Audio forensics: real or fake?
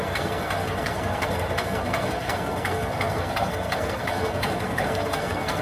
fake